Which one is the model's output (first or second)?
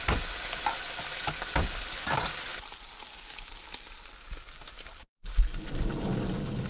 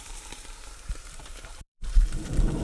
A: second